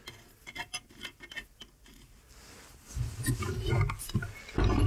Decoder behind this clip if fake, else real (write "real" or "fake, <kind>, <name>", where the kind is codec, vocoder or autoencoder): real